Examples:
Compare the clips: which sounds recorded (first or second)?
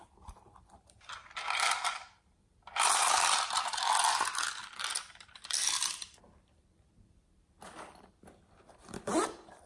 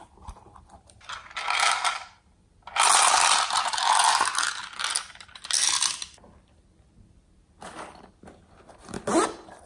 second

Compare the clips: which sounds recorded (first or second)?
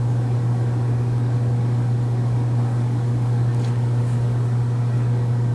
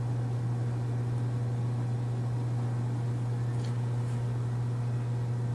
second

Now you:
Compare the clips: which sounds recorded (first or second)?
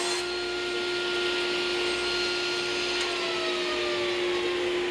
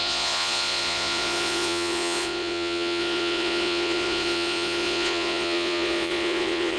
first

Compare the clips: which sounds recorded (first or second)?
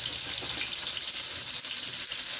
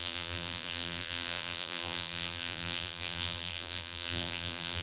first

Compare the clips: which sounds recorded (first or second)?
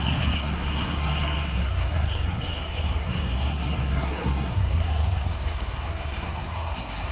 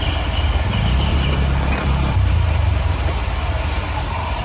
second